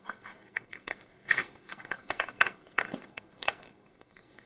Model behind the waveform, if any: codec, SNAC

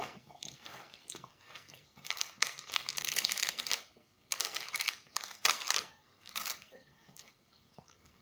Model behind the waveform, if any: codec, SNAC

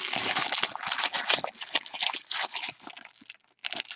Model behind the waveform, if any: none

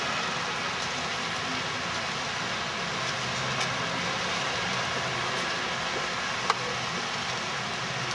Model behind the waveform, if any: none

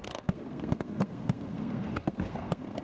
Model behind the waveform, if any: codec, SNAC